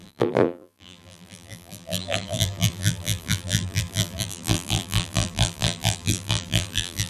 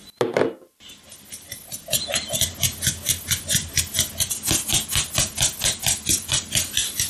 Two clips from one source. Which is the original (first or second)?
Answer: second